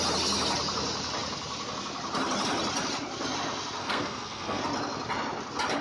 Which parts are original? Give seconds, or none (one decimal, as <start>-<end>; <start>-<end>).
0.0-3.8; 4.6-5.8